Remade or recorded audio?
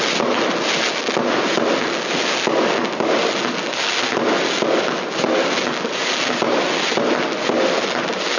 recorded